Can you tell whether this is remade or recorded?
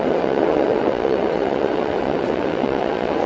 remade